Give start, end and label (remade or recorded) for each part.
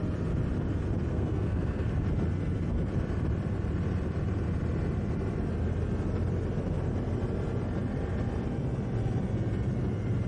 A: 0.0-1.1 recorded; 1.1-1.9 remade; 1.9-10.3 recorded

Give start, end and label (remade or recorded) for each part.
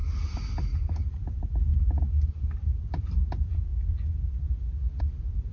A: 0.0-5.5 recorded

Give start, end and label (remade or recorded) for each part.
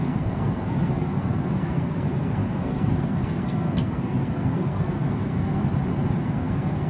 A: 0.0-5.6 remade; 5.6-6.2 recorded; 6.2-6.9 remade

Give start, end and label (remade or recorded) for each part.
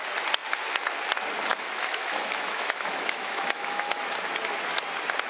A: 0.0-1.5 recorded; 1.5-4.2 remade; 4.2-5.3 recorded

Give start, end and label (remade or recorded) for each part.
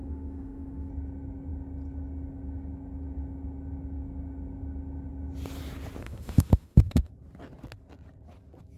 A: 0.0-0.9 remade; 0.9-6.0 recorded; 6.0-7.1 remade; 7.1-8.8 recorded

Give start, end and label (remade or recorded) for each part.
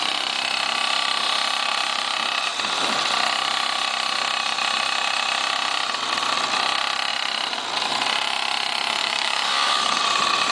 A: 0.0-9.0 recorded; 9.0-10.0 remade; 10.0-10.5 recorded